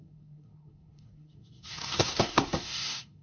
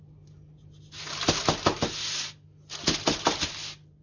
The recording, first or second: second